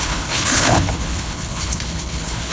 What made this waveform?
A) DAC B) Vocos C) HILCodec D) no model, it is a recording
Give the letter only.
C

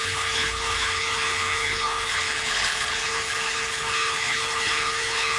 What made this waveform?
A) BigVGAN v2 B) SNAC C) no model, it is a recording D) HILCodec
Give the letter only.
D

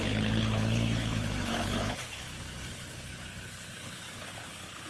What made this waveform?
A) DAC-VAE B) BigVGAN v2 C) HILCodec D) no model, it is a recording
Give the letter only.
C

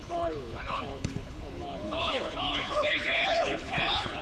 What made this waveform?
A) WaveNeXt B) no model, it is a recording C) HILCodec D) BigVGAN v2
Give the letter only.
C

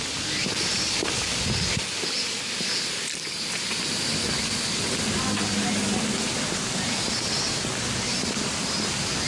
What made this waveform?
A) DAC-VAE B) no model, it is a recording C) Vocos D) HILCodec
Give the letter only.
B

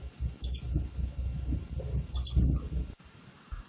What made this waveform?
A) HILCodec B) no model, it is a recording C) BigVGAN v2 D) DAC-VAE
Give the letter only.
B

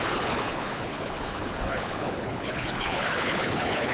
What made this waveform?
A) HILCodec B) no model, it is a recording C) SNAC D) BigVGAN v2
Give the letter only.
A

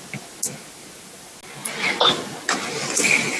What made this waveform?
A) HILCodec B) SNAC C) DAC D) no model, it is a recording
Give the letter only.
D